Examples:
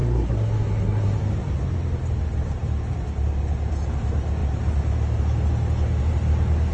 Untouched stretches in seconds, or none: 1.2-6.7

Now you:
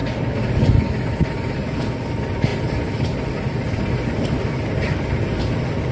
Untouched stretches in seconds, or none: 0.0-5.9

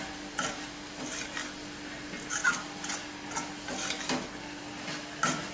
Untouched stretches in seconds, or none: 0.0-5.5